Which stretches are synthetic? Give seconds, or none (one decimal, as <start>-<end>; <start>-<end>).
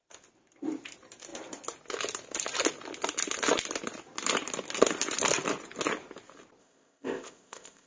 6.6-7.9